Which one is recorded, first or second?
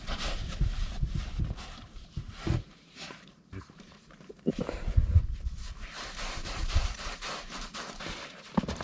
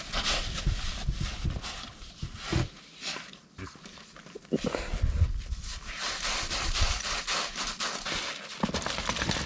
second